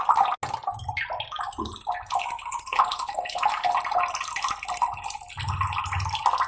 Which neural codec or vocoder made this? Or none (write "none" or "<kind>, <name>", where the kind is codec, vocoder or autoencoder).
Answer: none